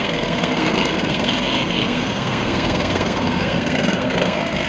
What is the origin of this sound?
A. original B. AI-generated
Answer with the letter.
B